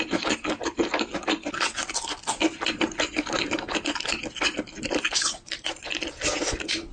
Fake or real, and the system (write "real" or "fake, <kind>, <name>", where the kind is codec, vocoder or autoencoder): real